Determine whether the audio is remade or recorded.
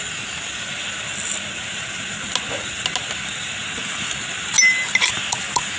recorded